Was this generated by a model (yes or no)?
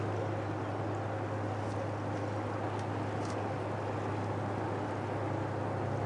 no